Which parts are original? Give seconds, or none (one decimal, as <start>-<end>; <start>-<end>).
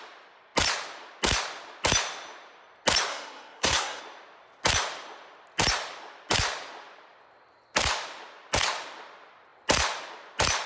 0.0-3.1; 4.0-10.7